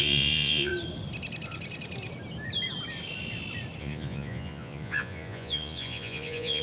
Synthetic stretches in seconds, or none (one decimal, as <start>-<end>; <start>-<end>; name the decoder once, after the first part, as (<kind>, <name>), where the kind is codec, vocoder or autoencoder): 0.0-0.7 (vocoder, Vocos); 3.8-6.6